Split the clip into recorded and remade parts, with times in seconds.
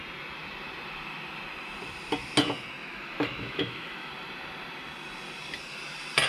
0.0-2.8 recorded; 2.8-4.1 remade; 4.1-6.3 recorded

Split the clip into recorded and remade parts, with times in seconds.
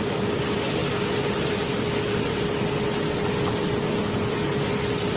0.0-5.2 recorded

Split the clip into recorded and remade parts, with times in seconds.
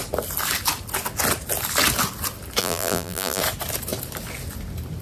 0.0-2.6 recorded; 2.6-3.4 remade; 3.4-5.0 recorded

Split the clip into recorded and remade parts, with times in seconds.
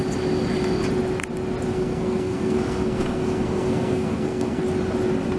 0.0-1.7 recorded; 1.7-4.6 remade; 4.6-5.4 recorded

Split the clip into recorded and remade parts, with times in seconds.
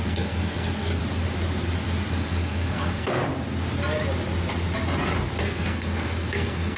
0.0-1.0 remade; 1.0-2.1 recorded; 2.1-3.2 remade; 3.2-5.4 recorded; 5.4-6.8 remade